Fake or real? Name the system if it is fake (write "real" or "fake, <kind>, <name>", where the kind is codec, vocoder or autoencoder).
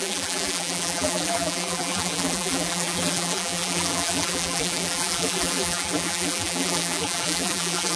fake, vocoder, BigVGAN v2